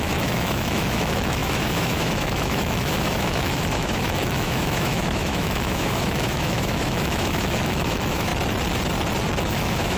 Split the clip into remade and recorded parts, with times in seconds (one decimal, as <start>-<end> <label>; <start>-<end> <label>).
0.0-8.3 remade; 8.3-9.4 recorded; 9.4-10.0 remade